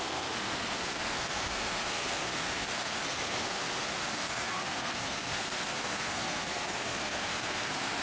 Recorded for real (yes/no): no